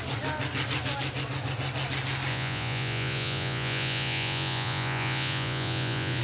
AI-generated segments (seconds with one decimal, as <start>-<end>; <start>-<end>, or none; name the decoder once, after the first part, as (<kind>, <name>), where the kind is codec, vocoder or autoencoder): 2.3-6.2 (vocoder, Vocos)